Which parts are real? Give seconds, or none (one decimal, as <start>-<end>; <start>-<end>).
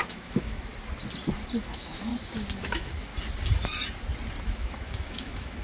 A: 0.7-1.6; 2.1-2.6; 3.1-4.4